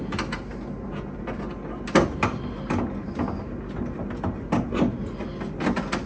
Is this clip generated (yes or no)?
no